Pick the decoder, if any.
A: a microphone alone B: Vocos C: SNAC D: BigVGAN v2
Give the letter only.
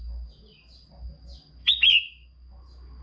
A